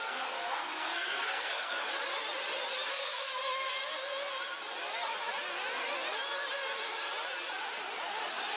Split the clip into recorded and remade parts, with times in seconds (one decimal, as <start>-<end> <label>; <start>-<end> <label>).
0.0-1.9 remade; 1.9-2.9 recorded; 2.9-3.3 remade; 3.3-8.6 recorded